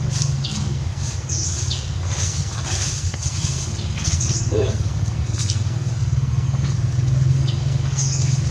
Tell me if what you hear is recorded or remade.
remade